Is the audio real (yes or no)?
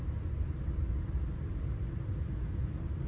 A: yes